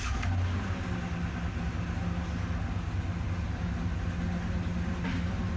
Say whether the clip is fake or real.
real